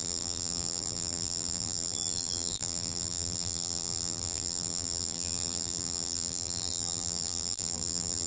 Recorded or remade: remade